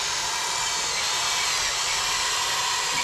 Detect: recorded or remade recorded